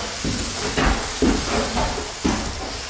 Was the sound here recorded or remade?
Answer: recorded